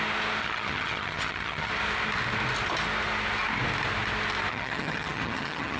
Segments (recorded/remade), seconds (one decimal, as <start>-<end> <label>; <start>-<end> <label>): 0.0-0.4 recorded; 0.4-1.7 remade; 1.7-4.5 recorded; 4.5-5.8 remade